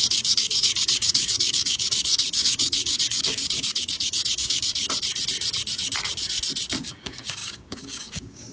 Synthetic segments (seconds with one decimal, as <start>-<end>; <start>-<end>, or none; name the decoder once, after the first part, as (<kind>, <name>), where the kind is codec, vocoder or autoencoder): 0.0-4.8 (codec, DAC); 6.9-8.5